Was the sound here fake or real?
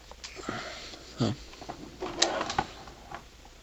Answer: real